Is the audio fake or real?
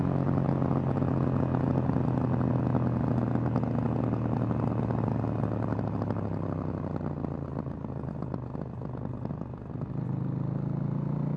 real